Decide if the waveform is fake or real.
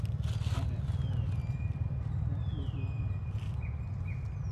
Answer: real